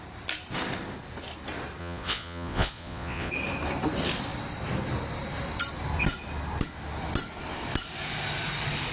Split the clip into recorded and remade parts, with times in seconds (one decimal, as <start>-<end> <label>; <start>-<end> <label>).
0.0-1.8 recorded; 1.8-3.3 remade; 3.3-8.9 recorded